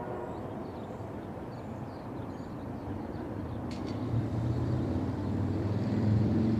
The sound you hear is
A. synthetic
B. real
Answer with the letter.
A